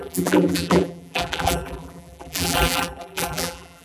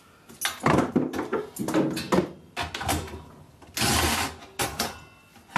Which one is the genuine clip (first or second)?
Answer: second